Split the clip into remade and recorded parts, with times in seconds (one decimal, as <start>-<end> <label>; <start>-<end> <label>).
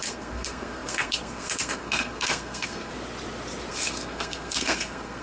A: 0.0-2.9 remade; 2.9-3.7 recorded; 3.7-5.2 remade